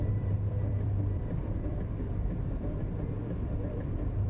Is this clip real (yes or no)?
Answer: no